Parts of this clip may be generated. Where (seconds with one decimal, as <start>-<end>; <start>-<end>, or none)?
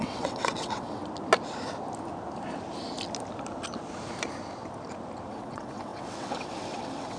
0.0-1.0; 5.3-7.2